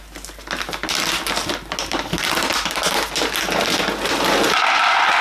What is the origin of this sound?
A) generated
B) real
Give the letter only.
B